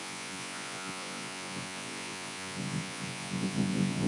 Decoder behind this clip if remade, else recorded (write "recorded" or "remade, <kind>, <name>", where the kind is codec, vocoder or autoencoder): remade, vocoder, Vocos